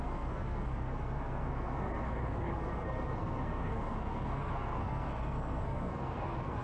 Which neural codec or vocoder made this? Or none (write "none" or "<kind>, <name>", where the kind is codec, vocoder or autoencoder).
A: codec, SNAC